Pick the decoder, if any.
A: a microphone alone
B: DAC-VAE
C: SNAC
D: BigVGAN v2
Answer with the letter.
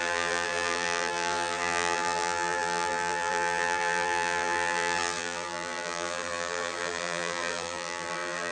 D